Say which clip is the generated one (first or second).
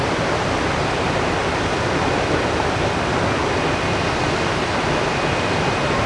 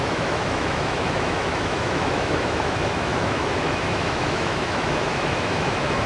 second